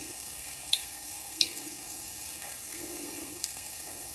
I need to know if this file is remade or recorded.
remade